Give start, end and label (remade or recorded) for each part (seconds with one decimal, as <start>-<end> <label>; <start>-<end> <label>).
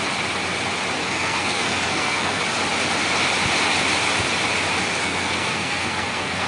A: 0.0-1.0 recorded; 1.0-2.4 remade; 2.4-5.0 recorded; 5.0-6.5 remade